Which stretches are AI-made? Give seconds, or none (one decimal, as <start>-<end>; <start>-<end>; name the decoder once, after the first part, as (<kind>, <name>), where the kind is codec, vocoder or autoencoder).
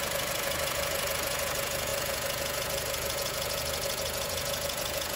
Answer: 0.0-5.2 (vocoder, Vocos)